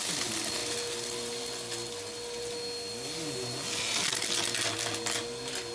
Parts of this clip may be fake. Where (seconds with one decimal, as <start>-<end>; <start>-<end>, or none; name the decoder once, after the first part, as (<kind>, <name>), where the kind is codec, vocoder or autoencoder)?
none